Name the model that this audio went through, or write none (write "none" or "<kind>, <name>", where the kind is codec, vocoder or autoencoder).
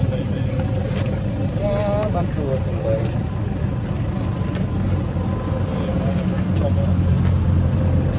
none